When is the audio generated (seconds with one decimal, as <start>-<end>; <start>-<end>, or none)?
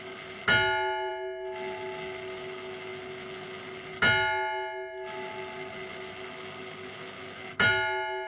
none